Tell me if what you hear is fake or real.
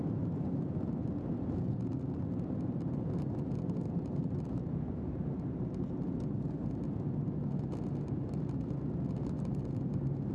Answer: real